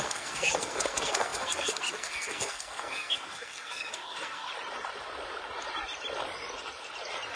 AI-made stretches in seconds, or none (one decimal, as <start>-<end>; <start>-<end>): 0.0-4.5